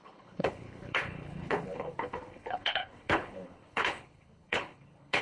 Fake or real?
fake